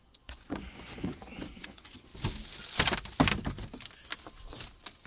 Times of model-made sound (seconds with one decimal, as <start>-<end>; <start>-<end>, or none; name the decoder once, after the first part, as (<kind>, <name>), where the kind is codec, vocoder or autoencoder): 0.0-2.1 (vocoder, Vocos)